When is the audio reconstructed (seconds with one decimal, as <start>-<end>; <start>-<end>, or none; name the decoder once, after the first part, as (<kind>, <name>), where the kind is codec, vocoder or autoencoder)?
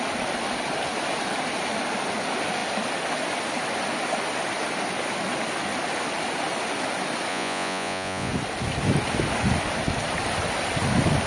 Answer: 7.3-8.3 (vocoder, Vocos)